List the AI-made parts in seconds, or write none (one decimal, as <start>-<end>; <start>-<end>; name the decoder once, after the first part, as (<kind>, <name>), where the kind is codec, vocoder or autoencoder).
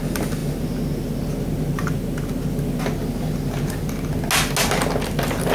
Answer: none